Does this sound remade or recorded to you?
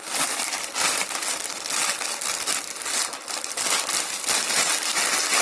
recorded